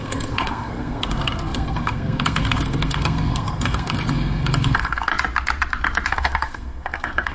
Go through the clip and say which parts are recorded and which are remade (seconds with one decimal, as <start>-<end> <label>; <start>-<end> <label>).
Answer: 0.0-5.1 remade; 5.1-6.1 recorded; 6.1-7.3 remade